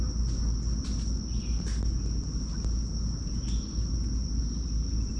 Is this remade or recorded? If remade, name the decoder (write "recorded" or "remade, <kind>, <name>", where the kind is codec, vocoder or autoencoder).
recorded